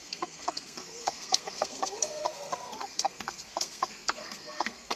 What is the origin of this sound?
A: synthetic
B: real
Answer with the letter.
A